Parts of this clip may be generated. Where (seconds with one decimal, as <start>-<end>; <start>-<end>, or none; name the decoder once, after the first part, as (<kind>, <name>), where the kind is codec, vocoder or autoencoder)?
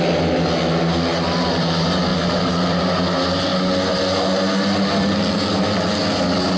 none